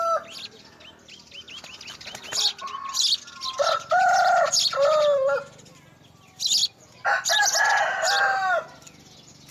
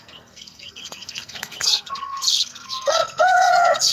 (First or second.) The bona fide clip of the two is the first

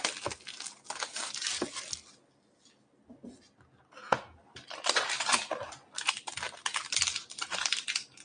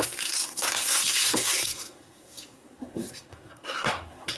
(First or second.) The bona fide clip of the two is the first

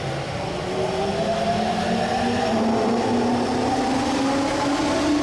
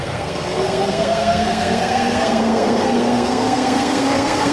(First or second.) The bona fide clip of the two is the first